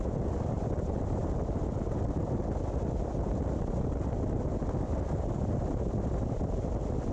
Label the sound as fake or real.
real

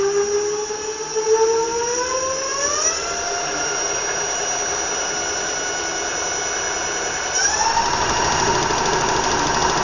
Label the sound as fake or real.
real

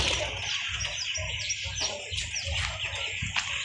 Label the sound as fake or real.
real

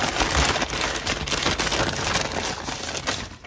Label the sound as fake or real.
real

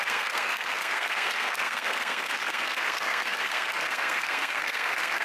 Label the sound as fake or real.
fake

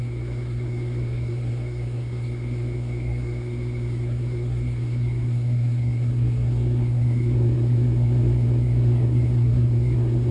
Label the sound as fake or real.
fake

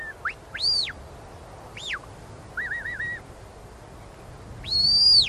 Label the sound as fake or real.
real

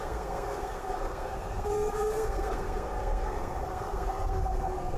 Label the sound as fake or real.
fake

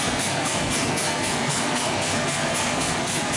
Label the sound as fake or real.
fake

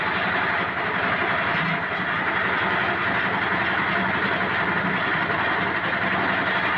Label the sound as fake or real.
real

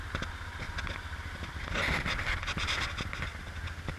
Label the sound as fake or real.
real